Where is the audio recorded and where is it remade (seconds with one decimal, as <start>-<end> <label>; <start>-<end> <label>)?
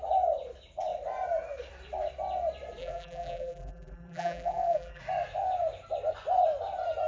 0.0-2.8 recorded; 2.8-5.0 remade; 5.0-7.1 recorded